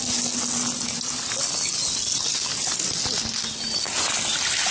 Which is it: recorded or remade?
recorded